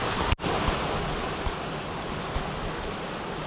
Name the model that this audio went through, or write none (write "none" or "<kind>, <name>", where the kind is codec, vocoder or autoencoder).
none